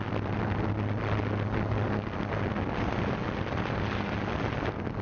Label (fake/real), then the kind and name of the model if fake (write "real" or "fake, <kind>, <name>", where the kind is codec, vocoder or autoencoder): real